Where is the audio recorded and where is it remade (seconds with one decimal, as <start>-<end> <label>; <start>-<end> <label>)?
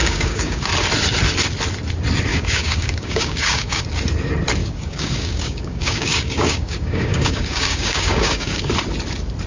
0.0-0.7 remade; 0.7-2.3 recorded; 2.3-3.8 remade; 3.8-4.6 recorded; 4.6-8.7 remade; 8.7-9.5 recorded